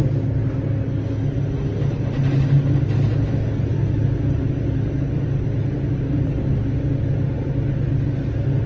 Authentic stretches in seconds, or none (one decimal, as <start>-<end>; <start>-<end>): 0.0-8.7